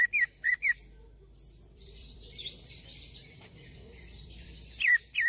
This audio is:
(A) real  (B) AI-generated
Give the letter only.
B